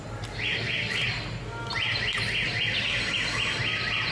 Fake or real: real